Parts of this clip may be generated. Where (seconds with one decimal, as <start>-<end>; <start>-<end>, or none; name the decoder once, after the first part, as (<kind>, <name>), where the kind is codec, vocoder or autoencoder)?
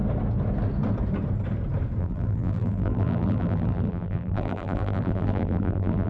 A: 2.0-6.1 (vocoder, BigVGAN v2)